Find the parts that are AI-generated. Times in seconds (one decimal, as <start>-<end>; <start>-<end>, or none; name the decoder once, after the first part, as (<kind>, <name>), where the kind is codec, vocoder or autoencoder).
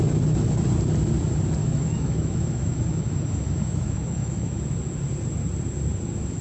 1.6-4.6 (autoencoder, DAC-VAE)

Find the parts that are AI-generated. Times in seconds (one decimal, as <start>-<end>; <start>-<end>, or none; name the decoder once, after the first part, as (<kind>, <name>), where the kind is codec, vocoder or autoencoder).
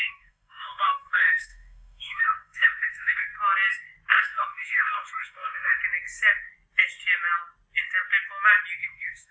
0.0-3.3 (autoencoder, DAC-VAE); 4.1-5.8; 8.8-9.3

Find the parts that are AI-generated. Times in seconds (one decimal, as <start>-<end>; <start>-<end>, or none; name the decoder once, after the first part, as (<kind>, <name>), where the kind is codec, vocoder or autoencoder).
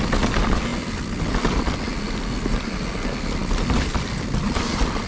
none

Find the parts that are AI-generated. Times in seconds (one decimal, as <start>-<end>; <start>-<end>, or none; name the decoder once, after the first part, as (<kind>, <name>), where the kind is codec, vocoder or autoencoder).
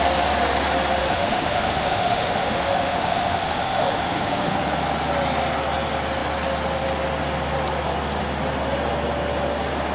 1.0-4.6 (autoencoder, DAC-VAE)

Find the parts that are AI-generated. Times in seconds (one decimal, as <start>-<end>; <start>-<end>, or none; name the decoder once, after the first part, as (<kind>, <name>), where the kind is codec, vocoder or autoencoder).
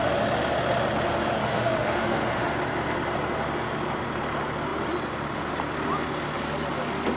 1.4-2.5 (autoencoder, DAC-VAE)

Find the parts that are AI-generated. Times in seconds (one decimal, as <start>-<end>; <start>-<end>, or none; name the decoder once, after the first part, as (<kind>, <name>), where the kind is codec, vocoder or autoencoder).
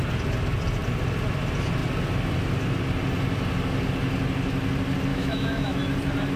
5.1-5.8 (autoencoder, DAC-VAE)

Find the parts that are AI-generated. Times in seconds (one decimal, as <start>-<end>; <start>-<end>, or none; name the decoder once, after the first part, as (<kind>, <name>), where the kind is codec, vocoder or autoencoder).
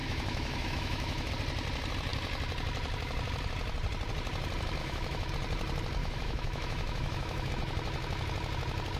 0.0-1.3 (autoencoder, DAC-VAE); 4.8-5.3; 6.0-7.5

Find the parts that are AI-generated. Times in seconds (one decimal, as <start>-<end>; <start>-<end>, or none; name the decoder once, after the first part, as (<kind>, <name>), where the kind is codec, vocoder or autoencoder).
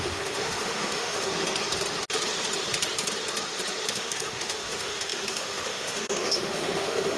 0.0-1.3 (autoencoder, DAC-VAE); 3.9-7.2